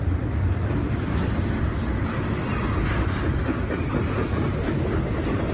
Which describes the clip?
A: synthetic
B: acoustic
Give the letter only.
B